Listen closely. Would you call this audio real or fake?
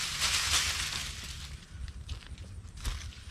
real